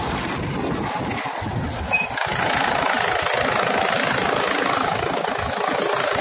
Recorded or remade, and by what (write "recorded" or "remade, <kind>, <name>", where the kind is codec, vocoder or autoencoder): recorded